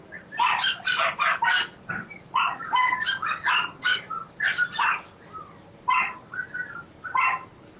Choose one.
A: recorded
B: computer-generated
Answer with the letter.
A